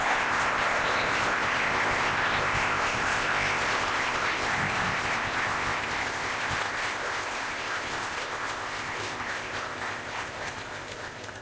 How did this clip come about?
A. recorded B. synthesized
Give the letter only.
B